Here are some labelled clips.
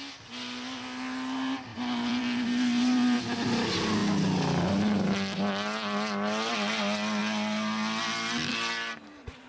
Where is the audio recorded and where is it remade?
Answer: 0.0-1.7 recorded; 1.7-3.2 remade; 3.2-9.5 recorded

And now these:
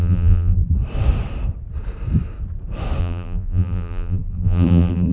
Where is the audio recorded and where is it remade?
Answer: 0.0-0.6 remade; 0.6-3.0 recorded; 3.0-5.1 remade

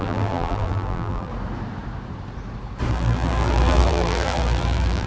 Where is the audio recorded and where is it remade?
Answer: 0.0-1.3 remade; 1.3-2.9 recorded; 2.9-5.1 remade

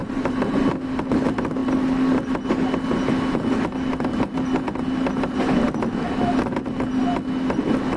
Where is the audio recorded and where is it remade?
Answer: 0.0-0.8 remade; 0.8-8.0 recorded

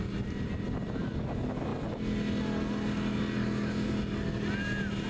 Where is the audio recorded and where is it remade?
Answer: 0.0-5.1 recorded

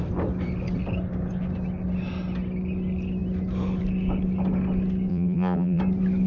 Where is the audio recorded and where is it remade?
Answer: 0.0-5.1 recorded; 5.1-5.8 remade; 5.8-6.3 recorded

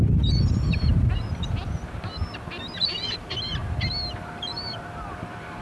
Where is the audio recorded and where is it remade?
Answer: 0.0-0.9 remade; 0.9-2.8 recorded; 2.8-3.6 remade; 3.6-4.3 recorded; 4.3-5.6 remade

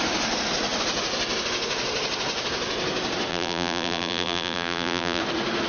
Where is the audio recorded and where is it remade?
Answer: 0.0-3.3 recorded; 3.3-5.2 remade; 5.2-5.7 recorded